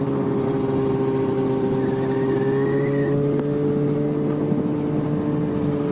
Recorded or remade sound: recorded